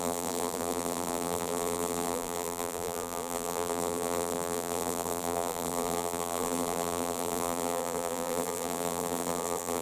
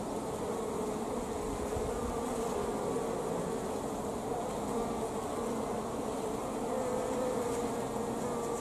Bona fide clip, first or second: second